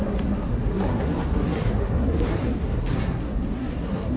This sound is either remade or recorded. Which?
remade